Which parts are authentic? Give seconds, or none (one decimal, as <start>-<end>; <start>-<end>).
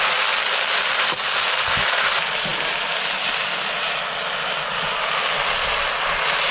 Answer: 0.0-6.5